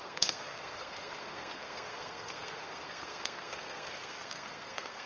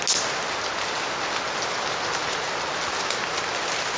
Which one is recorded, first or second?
second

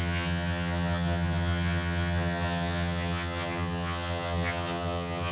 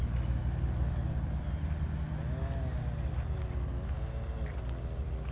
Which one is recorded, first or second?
second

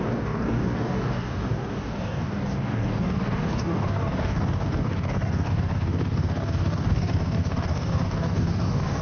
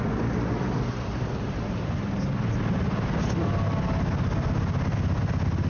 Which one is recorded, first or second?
second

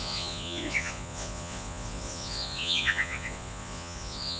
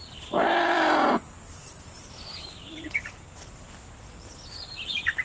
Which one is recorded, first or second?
second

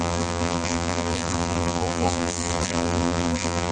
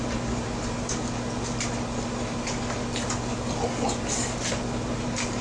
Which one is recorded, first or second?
second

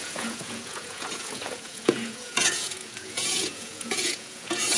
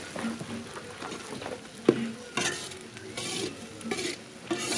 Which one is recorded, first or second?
second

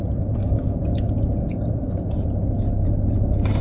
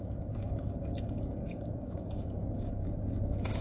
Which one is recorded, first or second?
first